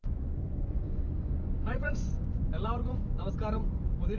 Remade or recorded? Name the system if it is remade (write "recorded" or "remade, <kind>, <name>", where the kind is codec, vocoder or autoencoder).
remade, vocoder, Vocos